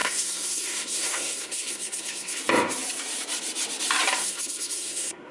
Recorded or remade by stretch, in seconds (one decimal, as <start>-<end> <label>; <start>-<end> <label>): 0.0-2.4 remade; 2.4-4.2 recorded; 4.2-5.3 remade